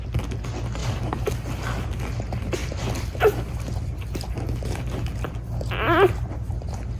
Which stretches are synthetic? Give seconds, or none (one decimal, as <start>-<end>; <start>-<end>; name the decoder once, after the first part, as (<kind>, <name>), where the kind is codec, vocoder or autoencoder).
0.8-1.3 (vocoder, BigVGAN v2); 2.6-7.0